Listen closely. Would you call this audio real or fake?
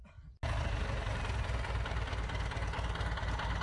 real